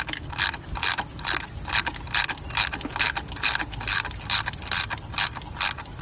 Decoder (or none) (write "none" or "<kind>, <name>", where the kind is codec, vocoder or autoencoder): none